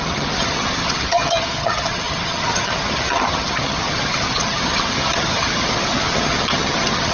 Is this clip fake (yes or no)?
yes